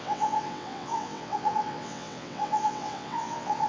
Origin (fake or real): fake